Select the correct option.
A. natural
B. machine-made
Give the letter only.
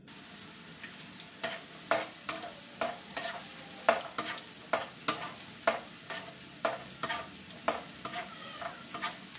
A